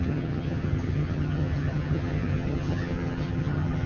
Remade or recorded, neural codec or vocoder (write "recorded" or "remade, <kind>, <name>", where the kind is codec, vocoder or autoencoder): remade, vocoder, HiFi-GAN